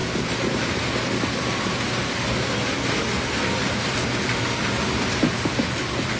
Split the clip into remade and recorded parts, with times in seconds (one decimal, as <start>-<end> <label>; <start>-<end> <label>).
0.0-6.2 recorded